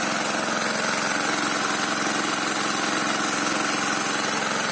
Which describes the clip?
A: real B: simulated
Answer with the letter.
A